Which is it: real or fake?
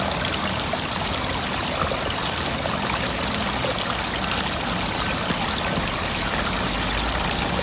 real